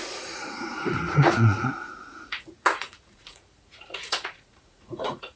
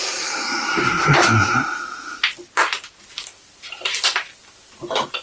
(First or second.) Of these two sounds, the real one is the second